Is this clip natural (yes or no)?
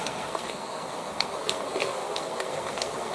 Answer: no